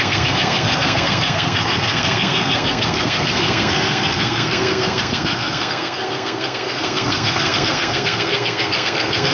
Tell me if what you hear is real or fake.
fake